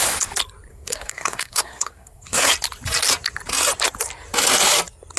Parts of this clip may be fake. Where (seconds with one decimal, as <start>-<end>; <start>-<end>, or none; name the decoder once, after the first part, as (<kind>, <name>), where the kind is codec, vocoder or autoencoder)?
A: 0.7-2.5 (codec, SNAC)